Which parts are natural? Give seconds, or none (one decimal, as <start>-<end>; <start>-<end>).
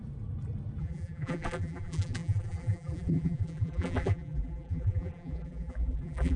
0.0-0.8